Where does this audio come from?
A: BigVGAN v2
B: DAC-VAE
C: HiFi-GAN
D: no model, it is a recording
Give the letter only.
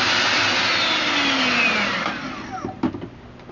D